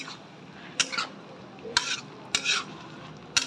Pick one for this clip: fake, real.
real